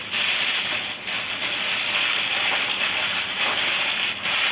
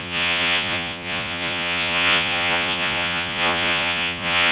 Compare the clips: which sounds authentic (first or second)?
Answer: first